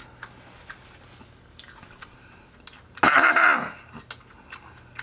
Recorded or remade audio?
recorded